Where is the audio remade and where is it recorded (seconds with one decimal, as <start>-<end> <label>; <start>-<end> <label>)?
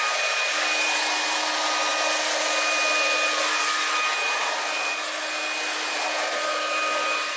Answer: 0.0-7.4 recorded